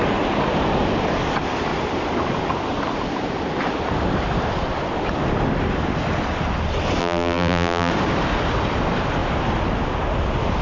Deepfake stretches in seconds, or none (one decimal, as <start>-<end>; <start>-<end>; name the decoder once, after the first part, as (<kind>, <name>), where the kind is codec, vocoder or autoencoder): 7.0-7.9 (vocoder, BigVGAN v2)